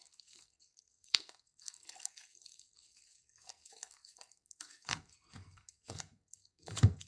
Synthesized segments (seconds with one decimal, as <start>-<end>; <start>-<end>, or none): 0.0-7.1

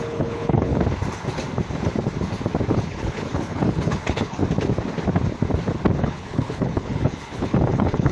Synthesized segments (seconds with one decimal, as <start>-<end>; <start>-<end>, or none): 0.0-0.7; 2.7-4.4; 6.0-8.1

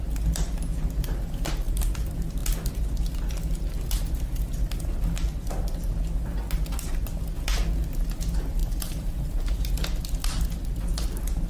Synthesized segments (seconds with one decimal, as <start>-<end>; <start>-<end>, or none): 8.6-9.7

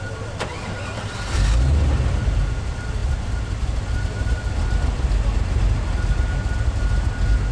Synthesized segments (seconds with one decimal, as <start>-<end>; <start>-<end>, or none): none